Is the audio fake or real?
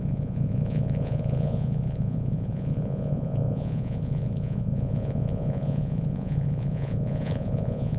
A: fake